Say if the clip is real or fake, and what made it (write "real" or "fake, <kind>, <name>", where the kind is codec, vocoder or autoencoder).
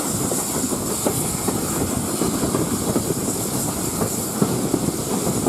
real